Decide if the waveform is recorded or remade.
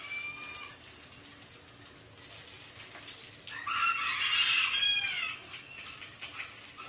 recorded